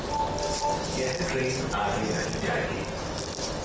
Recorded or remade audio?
recorded